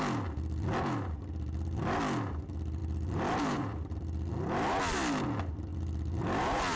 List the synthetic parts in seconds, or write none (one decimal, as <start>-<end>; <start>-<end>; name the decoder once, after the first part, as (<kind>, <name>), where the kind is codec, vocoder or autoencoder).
2.8-4.3 (vocoder, BigVGAN v2); 5.7-6.2